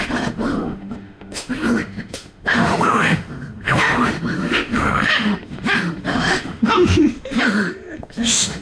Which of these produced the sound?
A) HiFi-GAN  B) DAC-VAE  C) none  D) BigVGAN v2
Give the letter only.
B